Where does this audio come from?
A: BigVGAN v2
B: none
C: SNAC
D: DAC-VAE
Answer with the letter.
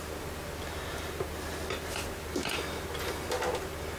B